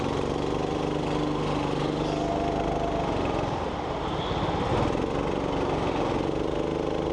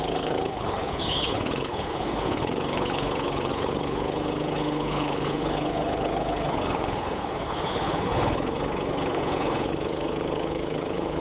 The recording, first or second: first